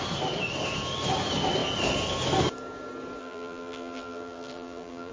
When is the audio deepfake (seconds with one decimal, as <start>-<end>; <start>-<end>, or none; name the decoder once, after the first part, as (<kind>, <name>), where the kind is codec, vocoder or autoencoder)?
3.2-5.1 (vocoder, BigVGAN v2)